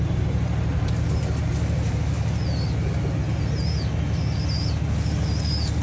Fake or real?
real